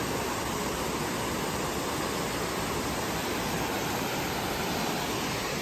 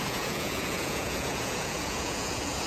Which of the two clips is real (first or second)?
first